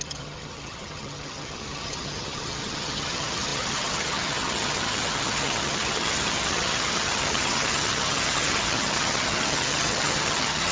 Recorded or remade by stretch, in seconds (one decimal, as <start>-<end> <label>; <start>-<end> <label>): 0.0-10.7 remade